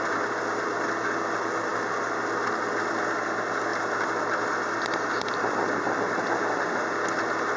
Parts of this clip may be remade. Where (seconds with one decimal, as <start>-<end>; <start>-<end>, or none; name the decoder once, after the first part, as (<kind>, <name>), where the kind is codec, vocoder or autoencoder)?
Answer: none